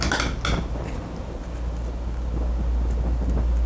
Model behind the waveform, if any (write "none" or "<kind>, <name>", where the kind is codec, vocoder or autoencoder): none